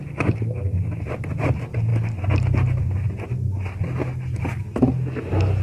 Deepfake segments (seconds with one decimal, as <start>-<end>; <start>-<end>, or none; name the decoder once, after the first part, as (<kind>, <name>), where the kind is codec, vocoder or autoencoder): none